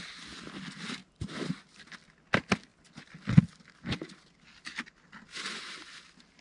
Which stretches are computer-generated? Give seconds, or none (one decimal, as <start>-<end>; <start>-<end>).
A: 1.0-1.6